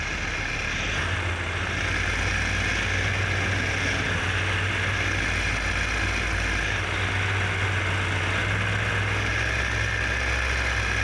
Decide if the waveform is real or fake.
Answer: real